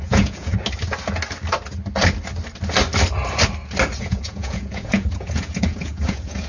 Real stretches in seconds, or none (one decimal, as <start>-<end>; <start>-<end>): 0.5-4.0